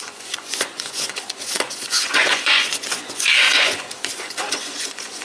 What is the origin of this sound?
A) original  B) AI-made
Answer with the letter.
B